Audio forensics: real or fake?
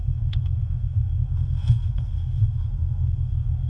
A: fake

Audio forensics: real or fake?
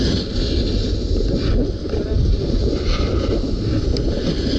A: real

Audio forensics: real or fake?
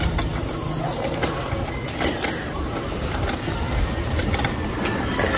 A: real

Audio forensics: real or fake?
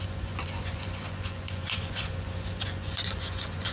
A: fake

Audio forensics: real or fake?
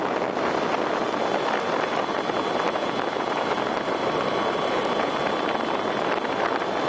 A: real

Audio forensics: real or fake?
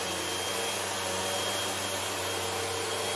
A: real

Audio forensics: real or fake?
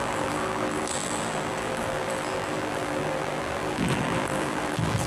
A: fake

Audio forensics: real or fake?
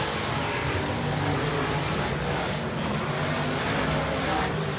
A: real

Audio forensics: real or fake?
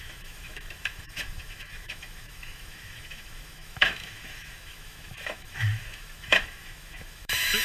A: fake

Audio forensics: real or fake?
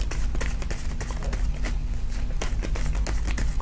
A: real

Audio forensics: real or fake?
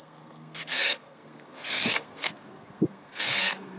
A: fake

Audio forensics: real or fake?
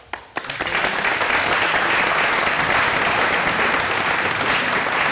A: real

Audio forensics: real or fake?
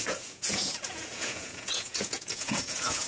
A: fake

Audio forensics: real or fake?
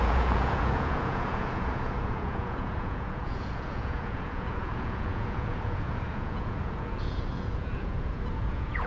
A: fake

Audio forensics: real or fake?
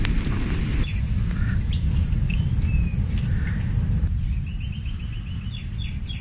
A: real